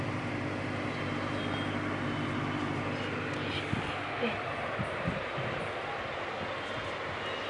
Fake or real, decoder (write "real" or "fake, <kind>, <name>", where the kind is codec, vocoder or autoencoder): real